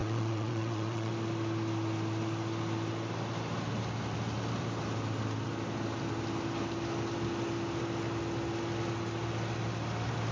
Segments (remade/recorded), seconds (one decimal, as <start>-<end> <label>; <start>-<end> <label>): 0.0-1.1 remade; 1.1-10.3 recorded